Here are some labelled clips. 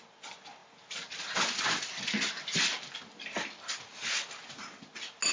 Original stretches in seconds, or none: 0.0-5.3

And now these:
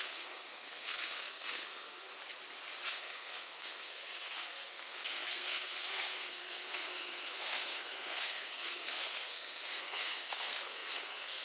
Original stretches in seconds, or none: 2.1-2.9